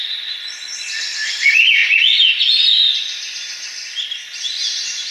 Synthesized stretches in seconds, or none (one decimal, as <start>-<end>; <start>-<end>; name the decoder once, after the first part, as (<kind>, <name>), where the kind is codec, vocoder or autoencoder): 0.0-1.8 (vocoder, BigVGAN v2)